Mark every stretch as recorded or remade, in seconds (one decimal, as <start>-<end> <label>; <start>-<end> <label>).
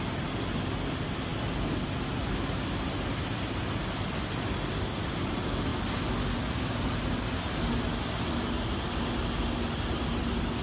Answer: 0.0-10.6 recorded